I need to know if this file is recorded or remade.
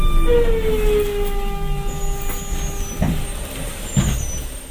recorded